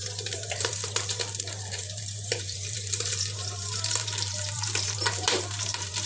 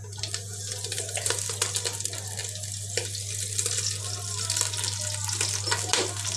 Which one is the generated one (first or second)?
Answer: first